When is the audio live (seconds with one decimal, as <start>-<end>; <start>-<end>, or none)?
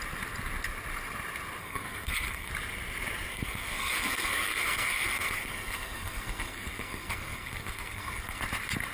0.0-1.6; 2.5-3.3; 8.4-8.9